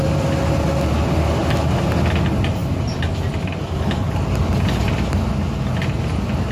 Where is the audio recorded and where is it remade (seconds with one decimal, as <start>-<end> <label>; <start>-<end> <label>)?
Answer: 0.0-6.5 recorded